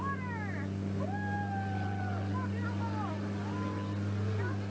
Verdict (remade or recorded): recorded